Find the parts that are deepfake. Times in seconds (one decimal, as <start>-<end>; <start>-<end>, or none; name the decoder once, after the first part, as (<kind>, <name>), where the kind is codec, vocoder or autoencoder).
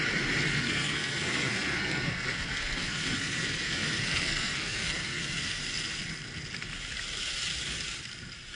0.5-5.6 (codec, SNAC)